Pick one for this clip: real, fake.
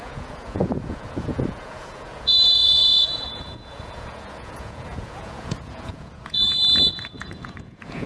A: fake